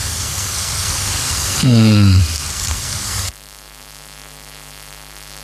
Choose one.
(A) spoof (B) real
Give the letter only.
A